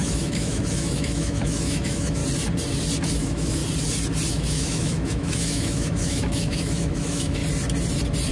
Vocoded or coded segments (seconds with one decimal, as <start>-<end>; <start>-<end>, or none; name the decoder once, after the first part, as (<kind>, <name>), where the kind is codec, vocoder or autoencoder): 0.0-2.2 (autoencoder, DAC-VAE); 3.1-3.6; 4.3-7.4